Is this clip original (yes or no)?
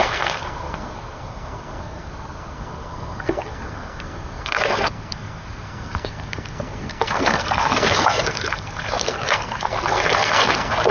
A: no